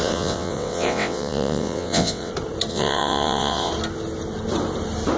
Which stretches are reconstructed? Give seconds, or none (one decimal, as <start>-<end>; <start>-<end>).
0.0-2.3; 2.7-3.7